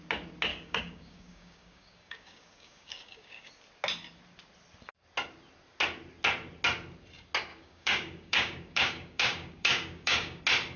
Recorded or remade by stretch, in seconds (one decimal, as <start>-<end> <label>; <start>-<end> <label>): 0.0-0.5 recorded; 0.5-3.5 remade; 3.5-7.5 recorded; 7.5-10.4 remade; 10.4-10.8 recorded